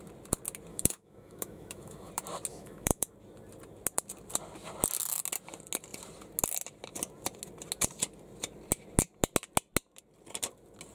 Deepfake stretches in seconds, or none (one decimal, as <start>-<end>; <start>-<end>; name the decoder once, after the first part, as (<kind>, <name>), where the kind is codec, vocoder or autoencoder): 0.7-2.1 (autoencoder, DAC-VAE); 2.5-3.1